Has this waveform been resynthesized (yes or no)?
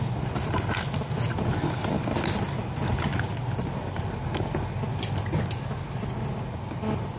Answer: no